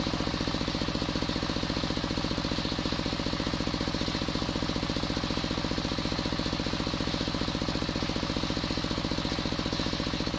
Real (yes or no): yes